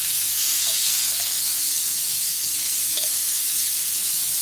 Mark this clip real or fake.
fake